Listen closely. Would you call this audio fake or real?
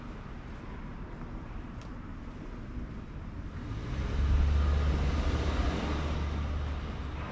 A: real